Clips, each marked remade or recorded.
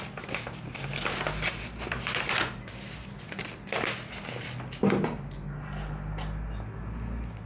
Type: recorded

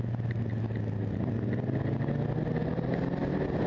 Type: recorded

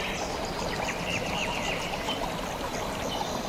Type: recorded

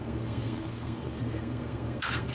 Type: remade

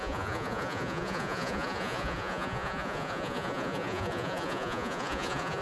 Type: remade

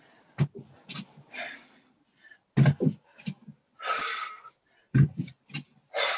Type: recorded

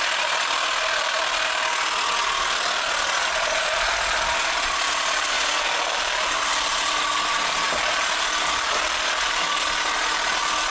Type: recorded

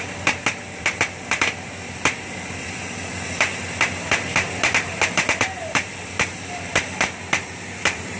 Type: remade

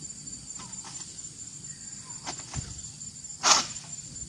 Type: recorded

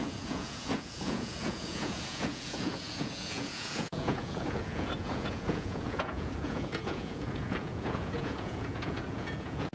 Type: remade